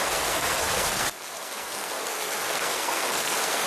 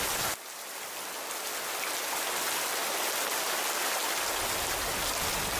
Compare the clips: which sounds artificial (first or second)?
first